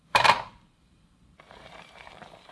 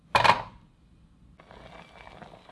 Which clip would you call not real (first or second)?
first